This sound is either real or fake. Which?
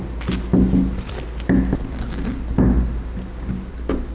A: real